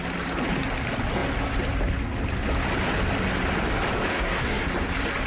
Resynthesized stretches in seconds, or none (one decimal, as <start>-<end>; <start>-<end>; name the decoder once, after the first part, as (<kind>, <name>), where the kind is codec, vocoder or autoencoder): 4.1-4.7 (codec, SNAC)